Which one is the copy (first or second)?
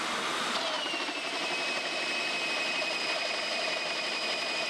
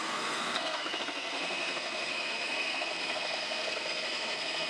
second